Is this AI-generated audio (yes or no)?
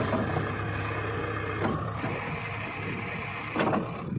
no